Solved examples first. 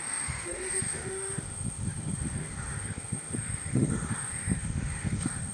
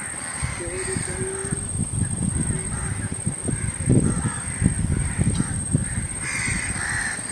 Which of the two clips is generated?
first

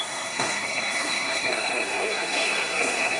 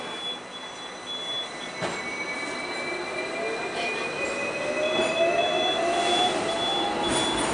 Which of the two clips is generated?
first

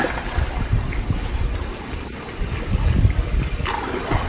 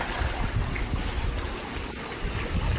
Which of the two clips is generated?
first